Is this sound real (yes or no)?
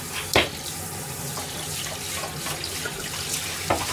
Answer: yes